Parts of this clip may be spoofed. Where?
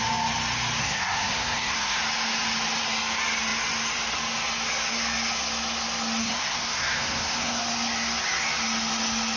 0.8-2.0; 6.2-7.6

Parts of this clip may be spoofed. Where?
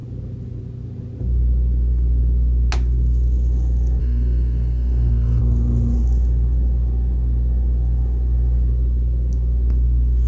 4.0-5.4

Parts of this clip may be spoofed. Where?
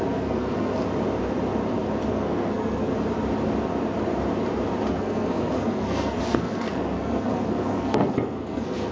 0.0-0.7; 2.1-2.9; 4.9-8.9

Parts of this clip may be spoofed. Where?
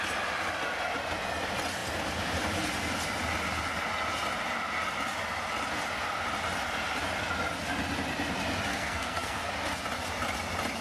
8.7-9.5